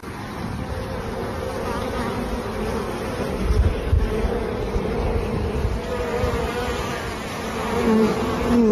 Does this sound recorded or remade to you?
recorded